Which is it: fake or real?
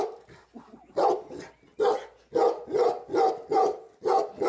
real